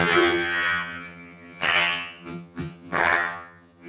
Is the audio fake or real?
fake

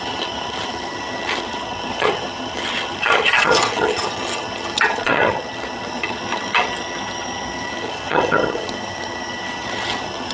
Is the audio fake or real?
fake